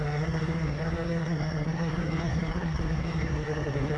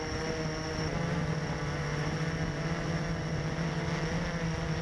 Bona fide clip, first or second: second